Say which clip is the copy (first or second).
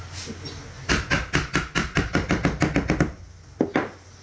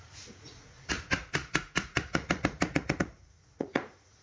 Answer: second